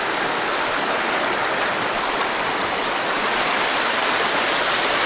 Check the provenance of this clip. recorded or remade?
recorded